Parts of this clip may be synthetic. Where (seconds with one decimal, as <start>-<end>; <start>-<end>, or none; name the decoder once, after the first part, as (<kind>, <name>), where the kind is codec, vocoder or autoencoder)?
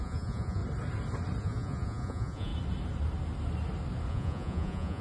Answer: 0.0-0.6 (vocoder, Vocos); 1.4-2.5; 4.1-5.0